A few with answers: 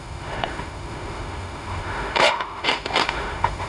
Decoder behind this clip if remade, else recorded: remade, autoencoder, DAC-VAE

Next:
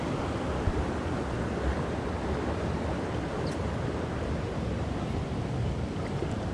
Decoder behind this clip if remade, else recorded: recorded